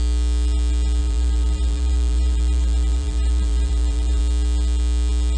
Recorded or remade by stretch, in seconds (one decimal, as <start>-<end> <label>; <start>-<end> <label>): 0.0-1.0 recorded; 1.0-4.2 remade; 4.2-5.4 recorded